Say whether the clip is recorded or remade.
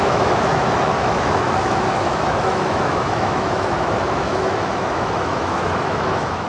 remade